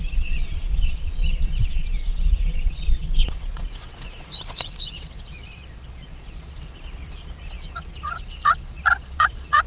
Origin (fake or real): fake